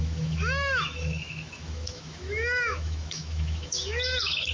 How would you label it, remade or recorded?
remade